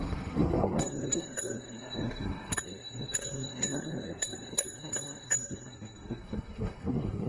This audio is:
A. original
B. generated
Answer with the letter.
B